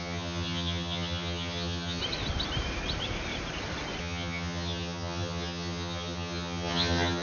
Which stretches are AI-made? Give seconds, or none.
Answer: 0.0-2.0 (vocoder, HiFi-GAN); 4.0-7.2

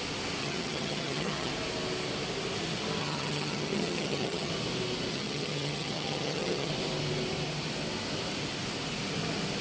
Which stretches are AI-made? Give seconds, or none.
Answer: 0.4-1.5 (vocoder, HiFi-GAN); 3.0-4.5; 5.1-6.7

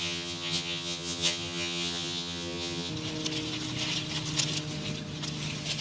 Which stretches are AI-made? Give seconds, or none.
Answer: 0.0-2.9 (vocoder, HiFi-GAN)

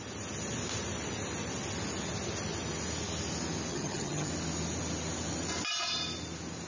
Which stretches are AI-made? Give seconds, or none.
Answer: 3.7-4.3 (vocoder, HiFi-GAN)

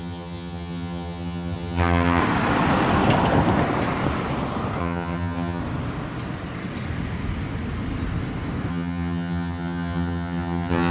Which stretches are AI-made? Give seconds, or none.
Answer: 0.0-2.2 (vocoder, HiFi-GAN); 4.8-5.6; 8.7-10.9

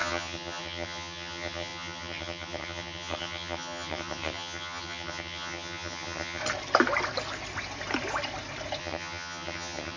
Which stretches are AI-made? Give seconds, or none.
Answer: 0.0-6.4 (vocoder, HiFi-GAN); 8.8-10.0